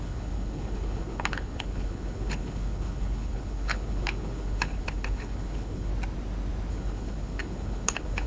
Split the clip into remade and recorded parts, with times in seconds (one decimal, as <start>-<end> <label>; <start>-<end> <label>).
0.0-5.9 remade; 5.9-6.7 recorded; 6.7-8.3 remade